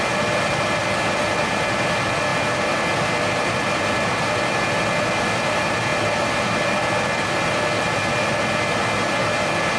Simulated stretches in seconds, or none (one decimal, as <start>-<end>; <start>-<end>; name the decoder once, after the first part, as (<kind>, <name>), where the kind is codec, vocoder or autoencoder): none

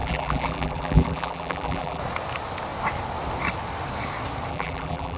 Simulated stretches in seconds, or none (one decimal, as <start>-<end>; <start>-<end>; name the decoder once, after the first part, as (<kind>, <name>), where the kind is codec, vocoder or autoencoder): 0.0-2.0 (vocoder, BigVGAN v2); 4.5-5.2

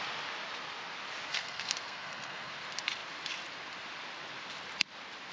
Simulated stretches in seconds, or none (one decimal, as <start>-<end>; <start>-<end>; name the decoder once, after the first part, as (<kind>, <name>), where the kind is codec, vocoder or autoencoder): 1.3-2.5 (codec, SNAC)

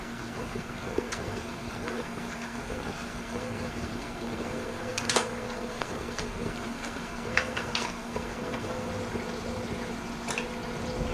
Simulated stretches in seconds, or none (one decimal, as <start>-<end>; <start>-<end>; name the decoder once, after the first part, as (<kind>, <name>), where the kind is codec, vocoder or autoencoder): 0.0-8.9 (codec, SNAC)

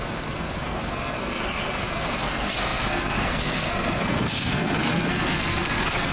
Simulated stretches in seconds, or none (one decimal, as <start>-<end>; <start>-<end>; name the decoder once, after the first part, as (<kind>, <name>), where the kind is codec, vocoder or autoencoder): 0.0-6.1 (codec, SNAC)